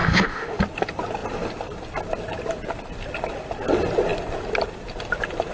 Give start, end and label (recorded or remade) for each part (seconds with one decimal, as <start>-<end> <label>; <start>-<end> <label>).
0.0-0.6 remade; 0.6-5.5 recorded